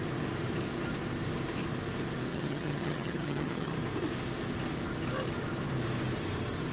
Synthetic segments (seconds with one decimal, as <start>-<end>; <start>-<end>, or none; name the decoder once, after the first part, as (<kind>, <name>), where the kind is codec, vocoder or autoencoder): 2.3-3.7 (vocoder, HiFi-GAN)